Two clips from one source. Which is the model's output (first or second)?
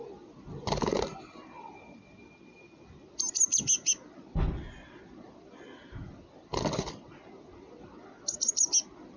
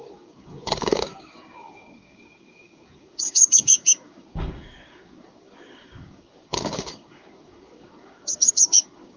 second